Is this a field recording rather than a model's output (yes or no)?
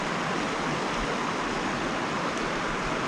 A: yes